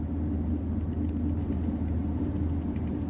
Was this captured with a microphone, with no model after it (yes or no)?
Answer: yes